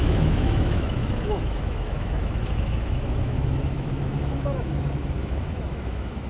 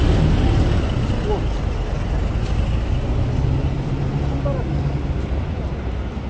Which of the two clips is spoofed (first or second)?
first